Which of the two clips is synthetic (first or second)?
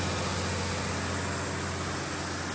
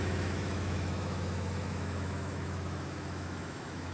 second